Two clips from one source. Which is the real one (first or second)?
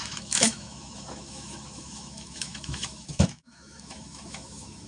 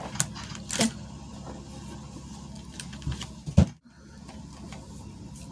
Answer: second